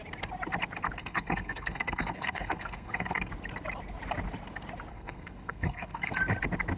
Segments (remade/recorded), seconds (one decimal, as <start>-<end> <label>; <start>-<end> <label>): 0.0-1.0 recorded; 1.0-3.3 remade; 3.3-4.9 recorded; 4.9-6.1 remade; 6.1-6.8 recorded